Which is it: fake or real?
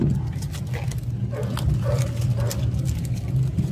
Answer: real